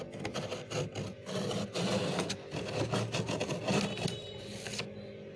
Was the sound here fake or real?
real